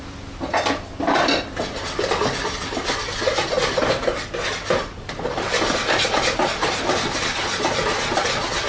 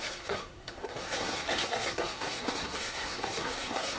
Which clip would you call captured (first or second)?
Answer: first